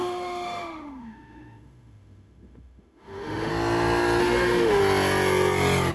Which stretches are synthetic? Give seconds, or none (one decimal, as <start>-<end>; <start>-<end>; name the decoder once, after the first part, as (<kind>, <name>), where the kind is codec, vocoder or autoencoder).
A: 0.0-3.5 (autoencoder, DAC-VAE); 4.2-4.8